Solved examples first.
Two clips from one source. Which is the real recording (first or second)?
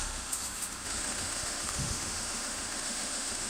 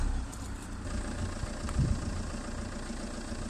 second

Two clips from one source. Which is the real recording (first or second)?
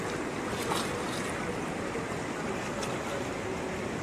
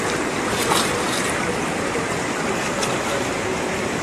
first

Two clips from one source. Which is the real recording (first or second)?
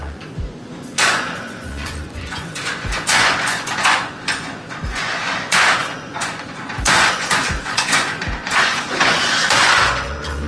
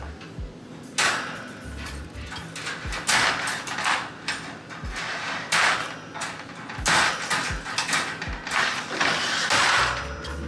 second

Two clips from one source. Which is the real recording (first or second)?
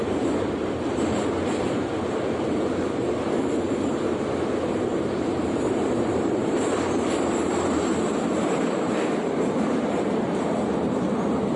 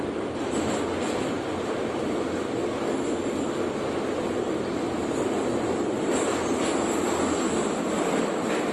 second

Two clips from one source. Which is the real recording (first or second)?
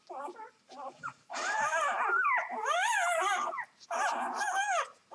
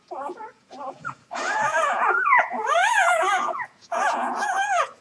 first